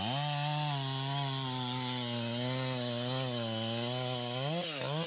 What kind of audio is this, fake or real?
real